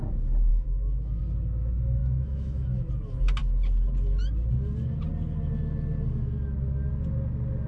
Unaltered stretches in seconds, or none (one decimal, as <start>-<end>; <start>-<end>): 0.0-0.5; 1.2-2.0; 2.9-7.7

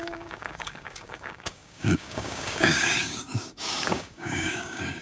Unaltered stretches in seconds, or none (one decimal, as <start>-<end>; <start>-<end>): none

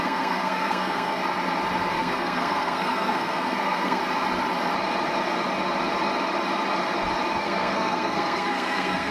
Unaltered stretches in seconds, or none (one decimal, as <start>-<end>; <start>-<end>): 1.2-1.9; 4.0-7.4

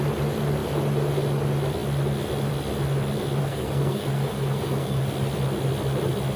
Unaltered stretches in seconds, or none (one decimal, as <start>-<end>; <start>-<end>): 0.0-3.4; 5.0-6.4

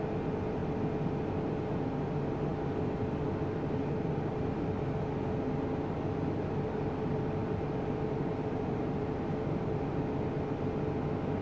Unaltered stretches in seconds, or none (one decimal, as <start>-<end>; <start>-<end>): 0.0-7.4; 9.9-11.4

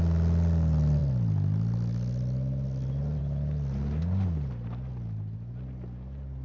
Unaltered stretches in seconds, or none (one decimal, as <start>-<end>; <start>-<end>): 0.0-6.4

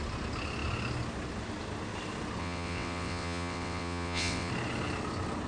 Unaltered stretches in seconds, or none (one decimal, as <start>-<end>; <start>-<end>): 0.0-2.4; 4.5-5.5